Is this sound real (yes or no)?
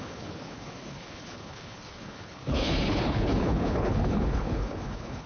no